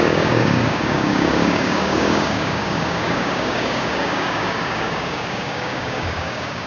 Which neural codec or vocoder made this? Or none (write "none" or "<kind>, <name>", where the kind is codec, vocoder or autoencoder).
codec, DAC